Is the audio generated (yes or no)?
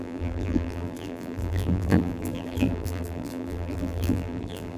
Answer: yes